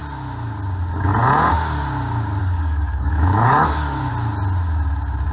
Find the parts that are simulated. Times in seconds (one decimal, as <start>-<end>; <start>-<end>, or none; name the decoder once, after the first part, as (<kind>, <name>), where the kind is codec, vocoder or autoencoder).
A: 2.4-4.1 (codec, DAC)